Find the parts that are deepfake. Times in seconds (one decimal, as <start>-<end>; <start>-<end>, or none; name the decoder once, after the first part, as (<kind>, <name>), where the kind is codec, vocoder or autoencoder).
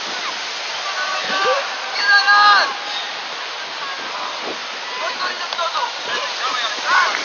none